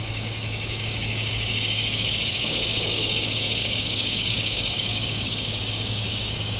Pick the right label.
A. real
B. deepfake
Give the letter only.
B